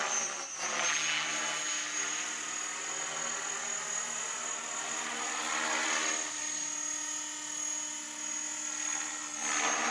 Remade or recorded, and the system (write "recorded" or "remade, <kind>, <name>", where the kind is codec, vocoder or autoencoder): recorded